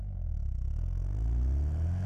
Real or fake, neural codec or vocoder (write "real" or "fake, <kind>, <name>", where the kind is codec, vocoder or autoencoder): real